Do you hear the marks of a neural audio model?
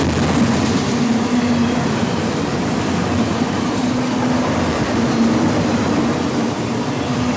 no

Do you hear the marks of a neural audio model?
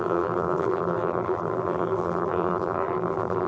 yes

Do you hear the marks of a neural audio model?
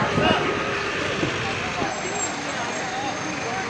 no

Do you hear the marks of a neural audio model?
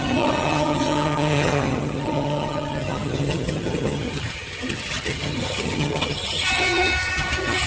yes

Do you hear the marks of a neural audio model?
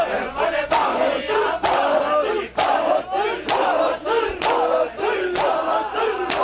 no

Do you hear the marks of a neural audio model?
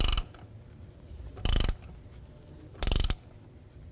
no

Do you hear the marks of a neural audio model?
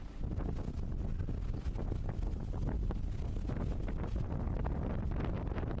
no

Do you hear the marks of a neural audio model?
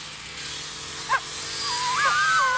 no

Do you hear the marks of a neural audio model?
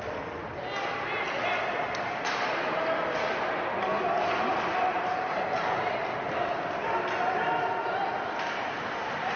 no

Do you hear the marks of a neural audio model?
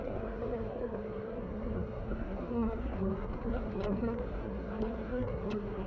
yes